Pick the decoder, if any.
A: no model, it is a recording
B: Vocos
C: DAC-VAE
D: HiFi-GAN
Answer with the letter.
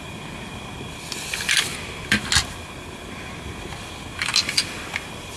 A